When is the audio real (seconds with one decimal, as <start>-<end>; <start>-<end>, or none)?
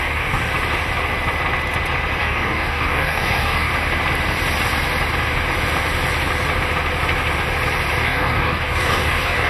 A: 0.5-2.2; 3.7-8.0